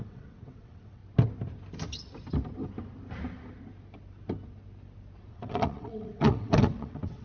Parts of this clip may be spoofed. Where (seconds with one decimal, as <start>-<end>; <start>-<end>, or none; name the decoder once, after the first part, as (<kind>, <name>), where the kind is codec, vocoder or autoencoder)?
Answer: 0.0-1.0 (vocoder, WaveNeXt); 5.3-7.2